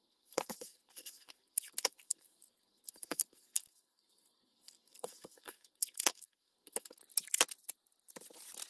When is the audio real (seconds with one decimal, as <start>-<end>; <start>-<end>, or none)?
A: 7.0-8.7